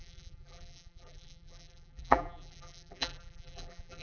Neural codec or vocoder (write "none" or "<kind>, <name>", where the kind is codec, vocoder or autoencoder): vocoder, BigVGAN v2